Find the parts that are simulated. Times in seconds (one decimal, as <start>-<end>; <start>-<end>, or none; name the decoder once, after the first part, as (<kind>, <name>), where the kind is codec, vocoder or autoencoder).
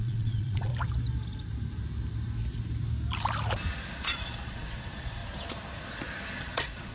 0.0-0.7 (vocoder, Vocos); 3.9-5.2; 6.4-6.9